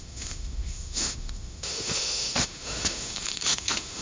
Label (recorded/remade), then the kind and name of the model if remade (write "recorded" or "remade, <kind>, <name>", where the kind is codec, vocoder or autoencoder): remade, autoencoder, DAC-VAE